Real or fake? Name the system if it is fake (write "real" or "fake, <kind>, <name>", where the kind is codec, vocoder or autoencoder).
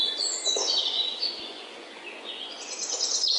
fake, vocoder, Vocos